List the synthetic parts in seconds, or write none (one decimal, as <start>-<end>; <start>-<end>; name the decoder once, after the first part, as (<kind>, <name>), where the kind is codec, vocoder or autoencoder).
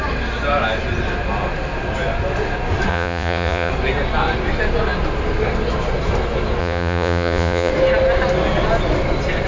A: 2.9-3.7 (vocoder, Vocos); 6.6-7.7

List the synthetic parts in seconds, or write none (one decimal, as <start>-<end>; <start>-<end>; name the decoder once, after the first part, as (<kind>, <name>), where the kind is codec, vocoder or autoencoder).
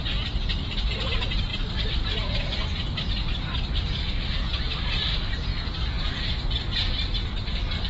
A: 1.5-4.6 (vocoder, BigVGAN v2)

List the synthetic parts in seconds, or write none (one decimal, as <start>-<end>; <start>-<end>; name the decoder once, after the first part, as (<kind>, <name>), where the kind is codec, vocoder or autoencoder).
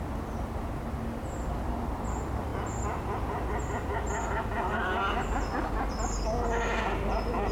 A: none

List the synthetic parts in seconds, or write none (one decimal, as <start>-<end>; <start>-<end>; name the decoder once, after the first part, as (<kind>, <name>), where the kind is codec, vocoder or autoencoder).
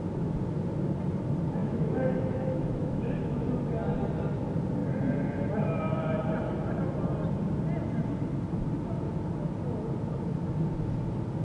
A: 1.6-3.4 (autoencoder, DAC-VAE)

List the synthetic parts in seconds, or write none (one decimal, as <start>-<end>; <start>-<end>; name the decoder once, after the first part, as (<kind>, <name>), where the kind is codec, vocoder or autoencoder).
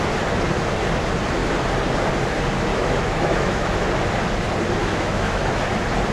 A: 2.7-3.9 (autoencoder, DAC-VAE); 4.8-5.4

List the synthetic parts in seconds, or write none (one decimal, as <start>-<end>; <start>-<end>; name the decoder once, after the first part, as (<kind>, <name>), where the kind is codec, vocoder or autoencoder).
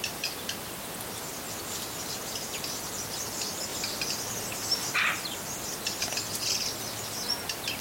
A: none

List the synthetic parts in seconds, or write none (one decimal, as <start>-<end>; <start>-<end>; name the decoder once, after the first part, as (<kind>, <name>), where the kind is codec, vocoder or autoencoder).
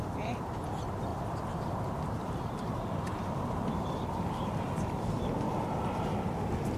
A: 1.1-5.2 (vocoder, BigVGAN v2)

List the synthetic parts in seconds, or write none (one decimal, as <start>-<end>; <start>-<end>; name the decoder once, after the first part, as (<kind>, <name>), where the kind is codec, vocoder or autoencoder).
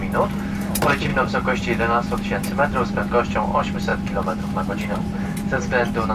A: 1.1-3.1 (vocoder, BigVGAN v2); 3.9-6.1